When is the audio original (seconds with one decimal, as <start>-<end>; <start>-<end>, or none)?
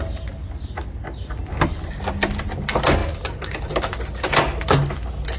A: 0.0-5.4